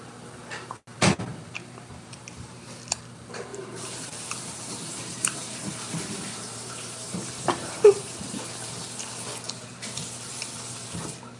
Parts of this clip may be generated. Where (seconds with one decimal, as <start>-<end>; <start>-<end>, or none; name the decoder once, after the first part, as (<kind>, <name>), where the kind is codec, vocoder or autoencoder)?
1.3-2.7 (vocoder, BigVGAN v2); 3.5-8.4